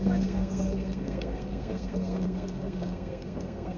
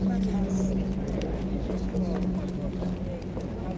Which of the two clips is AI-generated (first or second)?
first